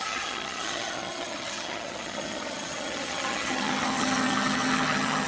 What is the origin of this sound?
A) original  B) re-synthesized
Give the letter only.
B